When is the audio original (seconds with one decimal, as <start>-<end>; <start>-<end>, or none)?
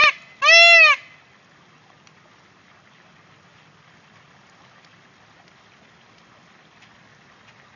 0.0-7.8